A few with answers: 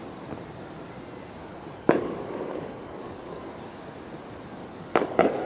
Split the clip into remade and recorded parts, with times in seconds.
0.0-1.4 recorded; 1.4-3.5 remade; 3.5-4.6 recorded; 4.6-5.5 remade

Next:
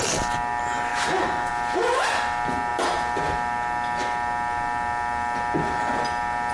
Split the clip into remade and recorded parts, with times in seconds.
0.0-6.5 recorded

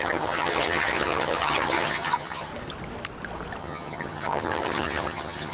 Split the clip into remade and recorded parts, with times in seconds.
0.0-2.5 remade; 2.5-3.6 recorded; 3.6-5.5 remade

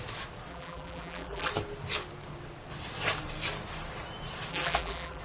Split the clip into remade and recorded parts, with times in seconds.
0.0-0.5 recorded; 0.5-1.5 remade; 1.5-4.5 recorded; 4.5-5.2 remade